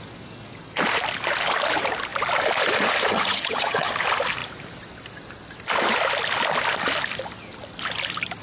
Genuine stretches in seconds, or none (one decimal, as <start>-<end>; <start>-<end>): 0.0-3.1; 3.9-8.4